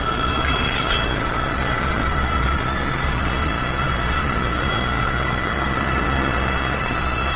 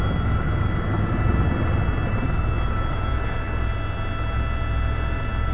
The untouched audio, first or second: second